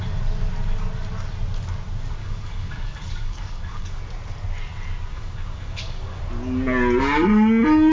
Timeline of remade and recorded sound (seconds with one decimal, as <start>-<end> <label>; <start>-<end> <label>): 0.0-2.2 recorded; 2.2-4.0 remade; 4.0-5.1 recorded; 5.1-6.2 remade; 6.2-7.9 recorded